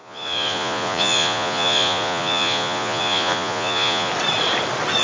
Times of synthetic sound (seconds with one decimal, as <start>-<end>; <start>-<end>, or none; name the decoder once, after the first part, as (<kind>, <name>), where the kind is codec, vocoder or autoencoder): 0.0-4.1 (vocoder, Vocos)